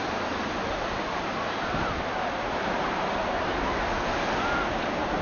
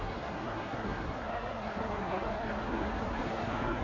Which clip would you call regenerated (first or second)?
second